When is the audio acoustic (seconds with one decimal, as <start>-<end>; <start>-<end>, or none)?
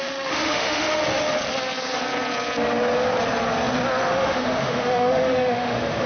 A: 1.0-4.1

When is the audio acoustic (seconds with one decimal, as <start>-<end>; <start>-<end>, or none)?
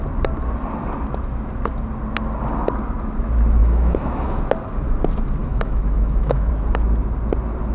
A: 0.0-3.6; 4.4-5.4; 6.5-7.7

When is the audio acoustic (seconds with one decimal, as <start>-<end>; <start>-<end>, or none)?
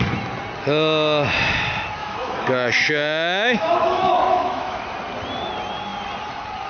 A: 0.0-2.0; 4.8-6.7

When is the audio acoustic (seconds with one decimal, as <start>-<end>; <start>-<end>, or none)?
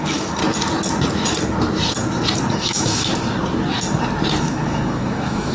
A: 0.4-2.5; 3.1-4.4